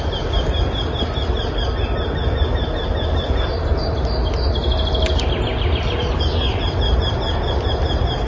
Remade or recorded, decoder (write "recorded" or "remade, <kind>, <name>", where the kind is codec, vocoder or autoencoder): recorded